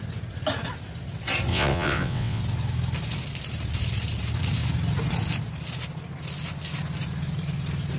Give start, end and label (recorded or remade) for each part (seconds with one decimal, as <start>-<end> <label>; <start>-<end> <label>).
0.0-1.5 recorded; 1.5-2.4 remade; 2.4-8.0 recorded